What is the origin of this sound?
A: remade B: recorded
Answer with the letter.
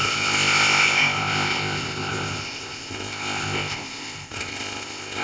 A